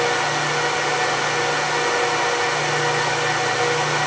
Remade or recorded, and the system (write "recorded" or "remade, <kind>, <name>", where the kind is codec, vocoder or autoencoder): recorded